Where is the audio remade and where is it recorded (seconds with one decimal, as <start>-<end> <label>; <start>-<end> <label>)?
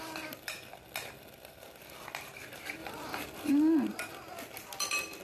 0.0-5.2 recorded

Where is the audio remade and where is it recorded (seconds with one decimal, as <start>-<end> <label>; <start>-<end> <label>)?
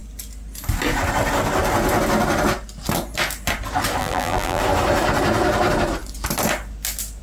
0.0-4.0 recorded; 4.0-4.6 remade; 4.6-7.2 recorded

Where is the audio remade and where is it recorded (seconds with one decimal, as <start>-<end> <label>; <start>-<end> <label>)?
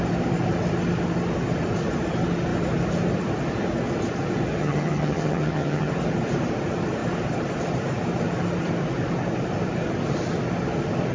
0.0-4.6 recorded; 4.6-5.9 remade; 5.9-11.1 recorded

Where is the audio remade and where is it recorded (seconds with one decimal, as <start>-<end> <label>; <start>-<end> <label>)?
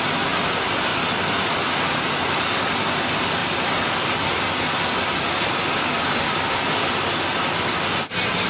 0.0-8.5 recorded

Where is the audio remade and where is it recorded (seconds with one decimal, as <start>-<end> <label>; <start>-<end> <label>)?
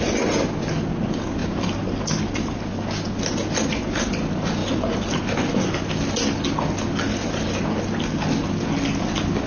0.0-9.5 recorded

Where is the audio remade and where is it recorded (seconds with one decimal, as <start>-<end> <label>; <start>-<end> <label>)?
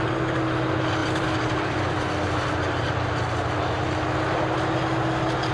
0.0-1.0 recorded; 1.0-1.9 remade; 1.9-5.5 recorded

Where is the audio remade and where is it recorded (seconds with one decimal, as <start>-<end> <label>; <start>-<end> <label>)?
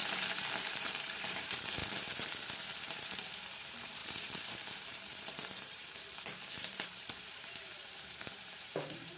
0.0-0.7 recorded; 0.7-1.8 remade; 1.8-2.9 recorded; 2.9-9.2 remade